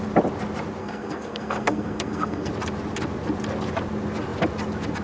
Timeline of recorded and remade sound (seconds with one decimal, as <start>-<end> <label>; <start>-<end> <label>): 0.0-0.8 recorded; 0.8-2.5 remade; 2.5-5.0 recorded